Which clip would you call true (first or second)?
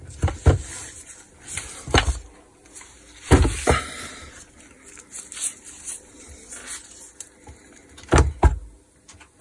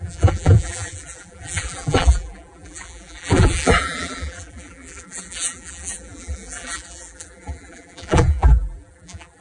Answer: first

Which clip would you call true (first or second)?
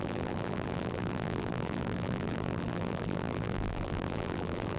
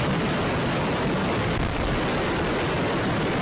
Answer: second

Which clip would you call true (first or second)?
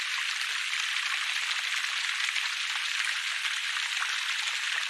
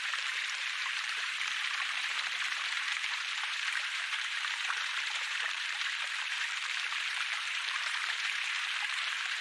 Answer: first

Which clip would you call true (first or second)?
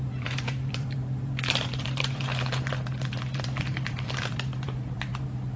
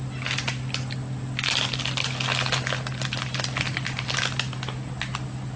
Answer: second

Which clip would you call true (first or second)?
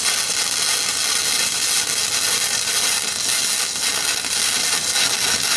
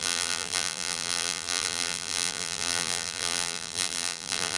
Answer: first